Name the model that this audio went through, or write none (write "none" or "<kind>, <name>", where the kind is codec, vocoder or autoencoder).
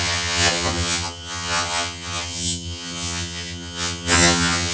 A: vocoder, HiFi-GAN